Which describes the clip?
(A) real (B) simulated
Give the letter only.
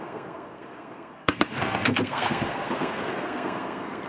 B